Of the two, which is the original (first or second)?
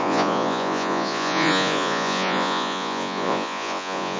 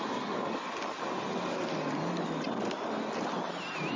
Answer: second